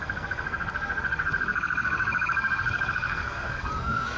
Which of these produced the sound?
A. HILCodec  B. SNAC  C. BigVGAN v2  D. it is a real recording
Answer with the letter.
B